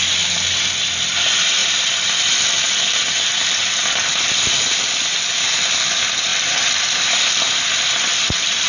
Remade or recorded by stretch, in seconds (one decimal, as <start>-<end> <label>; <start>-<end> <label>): 0.0-8.7 recorded